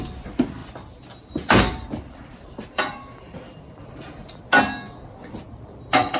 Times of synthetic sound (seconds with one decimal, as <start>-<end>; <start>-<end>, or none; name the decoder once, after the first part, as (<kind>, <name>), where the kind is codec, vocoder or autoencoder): 0.6-4.3 (vocoder, BigVGAN v2); 5.2-6.2